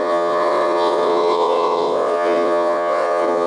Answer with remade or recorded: remade